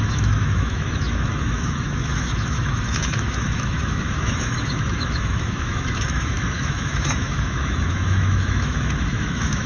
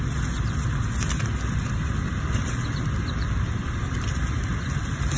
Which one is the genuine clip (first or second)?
second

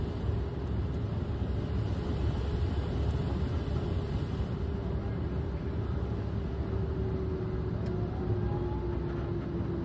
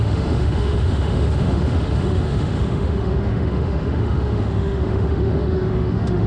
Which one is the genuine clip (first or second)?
first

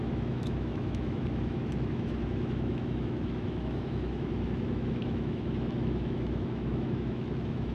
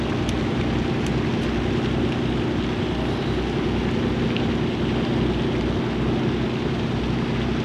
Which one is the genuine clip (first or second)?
second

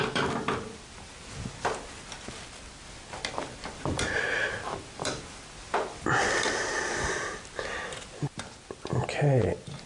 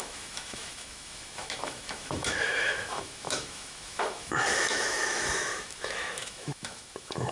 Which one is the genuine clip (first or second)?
first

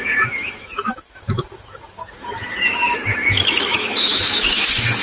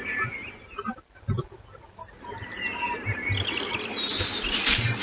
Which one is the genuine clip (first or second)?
second